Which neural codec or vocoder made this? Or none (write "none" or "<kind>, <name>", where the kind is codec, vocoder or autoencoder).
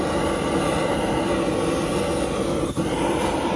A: none